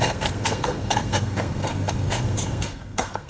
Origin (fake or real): fake